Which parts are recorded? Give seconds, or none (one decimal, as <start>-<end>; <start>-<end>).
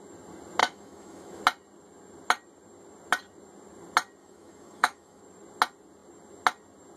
0.0-0.6; 1.4-4.2; 5.2-7.0